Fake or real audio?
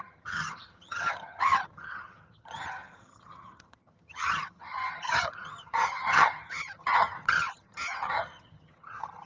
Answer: fake